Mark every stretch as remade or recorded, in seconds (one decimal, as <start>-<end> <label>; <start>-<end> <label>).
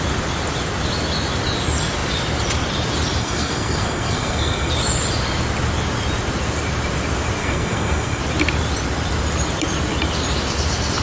0.0-3.2 recorded; 3.2-4.7 remade; 4.7-7.4 recorded; 7.4-8.2 remade; 8.2-11.0 recorded